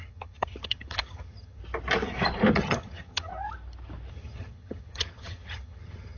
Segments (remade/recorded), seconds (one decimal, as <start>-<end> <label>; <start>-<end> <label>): 0.0-1.6 remade; 1.6-2.5 recorded; 2.5-3.3 remade; 3.3-4.1 recorded; 4.1-6.2 remade